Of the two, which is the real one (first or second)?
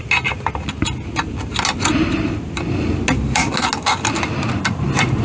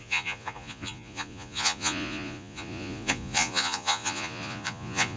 first